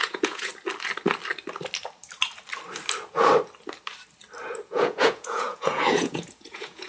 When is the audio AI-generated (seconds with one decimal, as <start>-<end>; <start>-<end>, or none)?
0.0-0.5; 4.6-6.9